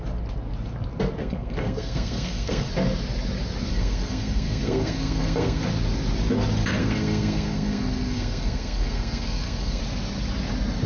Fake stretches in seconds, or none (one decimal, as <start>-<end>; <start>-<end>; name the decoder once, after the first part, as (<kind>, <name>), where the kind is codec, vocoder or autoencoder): 1.2-2.7 (codec, SNAC); 3.7-5.6; 6.8-9.8